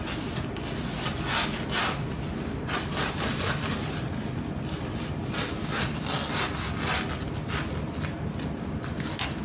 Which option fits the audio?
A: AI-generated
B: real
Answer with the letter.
B